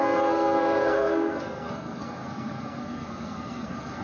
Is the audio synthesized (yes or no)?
yes